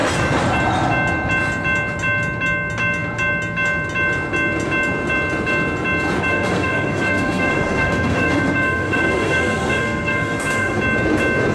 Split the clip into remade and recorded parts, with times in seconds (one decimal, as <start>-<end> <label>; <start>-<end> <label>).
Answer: 0.0-6.3 recorded; 6.3-10.8 remade; 10.8-11.5 recorded